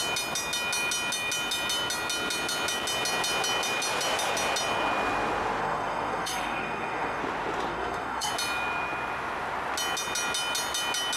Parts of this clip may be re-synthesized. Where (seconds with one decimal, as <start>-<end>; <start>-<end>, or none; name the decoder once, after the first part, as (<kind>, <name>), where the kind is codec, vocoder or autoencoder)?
5.6-7.2 (codec, SNAC); 7.7-8.3